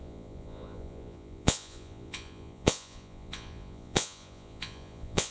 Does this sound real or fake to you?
fake